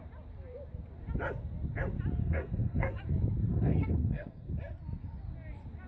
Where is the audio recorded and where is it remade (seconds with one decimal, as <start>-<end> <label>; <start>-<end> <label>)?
0.0-2.2 recorded; 2.2-3.0 remade; 3.0-3.5 recorded; 3.5-4.5 remade; 4.5-5.9 recorded